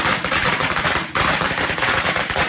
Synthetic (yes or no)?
yes